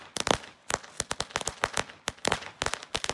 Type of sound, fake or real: real